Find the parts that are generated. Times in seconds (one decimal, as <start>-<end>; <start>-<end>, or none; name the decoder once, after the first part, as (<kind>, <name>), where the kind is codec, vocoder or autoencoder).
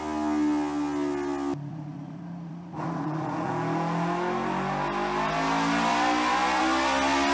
1.7-3.5 (vocoder, Vocos)